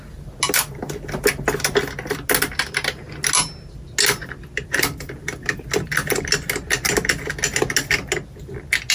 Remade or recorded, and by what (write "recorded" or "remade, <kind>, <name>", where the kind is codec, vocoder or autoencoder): recorded